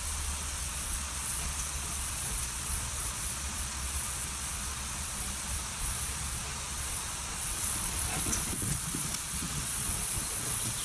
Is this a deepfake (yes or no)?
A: yes